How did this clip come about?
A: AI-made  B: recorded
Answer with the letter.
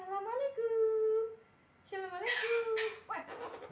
B